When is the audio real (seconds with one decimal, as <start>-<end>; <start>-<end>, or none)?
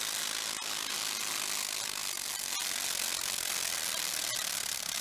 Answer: 0.0-5.0